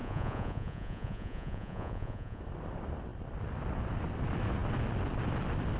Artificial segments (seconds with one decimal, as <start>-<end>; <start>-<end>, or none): 0.0-2.4